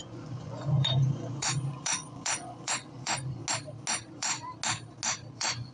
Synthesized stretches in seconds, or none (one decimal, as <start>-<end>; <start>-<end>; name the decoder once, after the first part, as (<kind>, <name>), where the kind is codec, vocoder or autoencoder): 0.0-3.4 (vocoder, Vocos); 4.1-4.5; 5.3-5.7

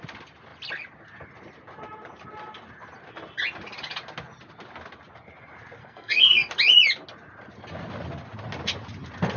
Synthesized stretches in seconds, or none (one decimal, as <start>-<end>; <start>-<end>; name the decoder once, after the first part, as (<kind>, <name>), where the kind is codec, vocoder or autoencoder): 5.8-6.5 (codec, SNAC)

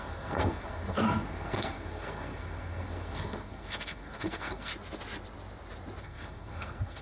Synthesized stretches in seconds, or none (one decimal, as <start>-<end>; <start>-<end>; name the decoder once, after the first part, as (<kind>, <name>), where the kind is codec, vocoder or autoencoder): 0.0-4.7 (codec, SNAC); 6.0-7.0

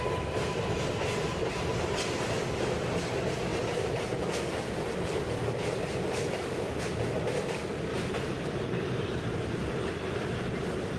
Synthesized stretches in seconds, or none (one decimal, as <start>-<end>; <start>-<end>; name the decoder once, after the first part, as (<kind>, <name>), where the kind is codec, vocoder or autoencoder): 1.3-1.9 (vocoder, BigVGAN v2); 7.9-9.1

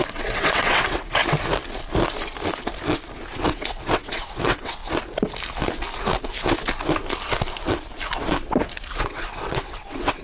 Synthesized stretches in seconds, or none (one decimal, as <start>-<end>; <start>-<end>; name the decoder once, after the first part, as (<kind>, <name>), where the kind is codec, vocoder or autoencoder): 0.0-1.2 (vocoder, WaveNeXt); 3.3-4.8; 9.0-10.2

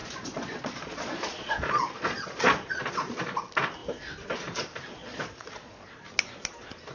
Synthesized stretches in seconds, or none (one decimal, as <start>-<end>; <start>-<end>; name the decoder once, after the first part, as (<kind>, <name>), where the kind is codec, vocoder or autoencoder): 0.0-3.2 (vocoder, Vocos); 5.0-5.9